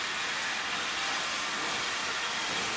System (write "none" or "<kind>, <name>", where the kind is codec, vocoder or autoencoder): none